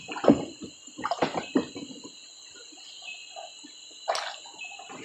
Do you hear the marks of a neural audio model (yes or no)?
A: no